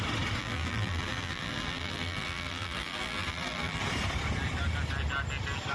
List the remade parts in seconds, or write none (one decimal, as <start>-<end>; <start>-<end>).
0.4-3.8